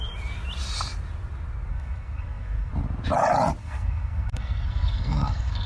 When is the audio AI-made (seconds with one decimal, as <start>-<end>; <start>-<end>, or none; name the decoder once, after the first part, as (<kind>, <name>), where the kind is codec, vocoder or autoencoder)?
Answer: 1.7-2.7 (codec, SNAC); 3.6-5.7